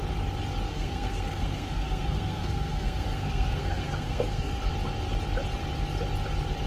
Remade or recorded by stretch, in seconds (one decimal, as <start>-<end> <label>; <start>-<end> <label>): 0.0-0.7 recorded; 0.7-4.7 remade; 4.7-6.7 recorded